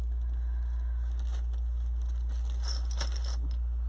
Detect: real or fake real